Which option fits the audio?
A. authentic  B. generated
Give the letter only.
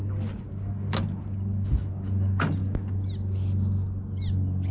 A